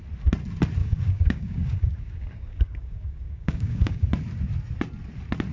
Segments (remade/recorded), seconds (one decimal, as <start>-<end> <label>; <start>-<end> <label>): 0.0-0.8 recorded; 0.8-4.1 remade; 4.1-5.5 recorded